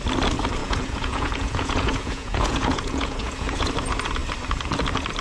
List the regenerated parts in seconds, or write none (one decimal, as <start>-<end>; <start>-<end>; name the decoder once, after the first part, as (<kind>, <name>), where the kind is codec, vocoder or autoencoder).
0.6-3.7 (vocoder, Vocos)